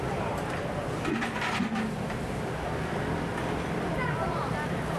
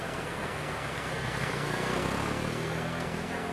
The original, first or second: first